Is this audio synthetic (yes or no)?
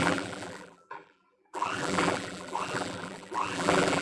yes